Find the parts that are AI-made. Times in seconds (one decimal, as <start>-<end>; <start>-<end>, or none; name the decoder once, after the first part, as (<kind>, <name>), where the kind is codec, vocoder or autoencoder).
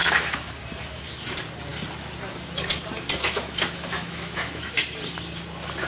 0.0-0.5 (autoencoder, DAC-VAE); 3.2-4.7